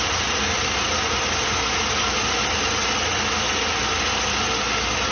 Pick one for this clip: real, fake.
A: real